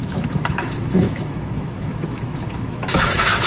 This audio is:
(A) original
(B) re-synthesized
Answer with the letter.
B